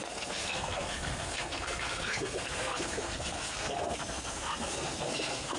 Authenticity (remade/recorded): remade